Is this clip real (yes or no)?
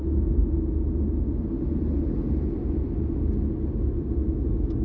yes